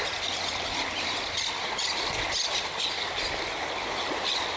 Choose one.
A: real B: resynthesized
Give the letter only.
A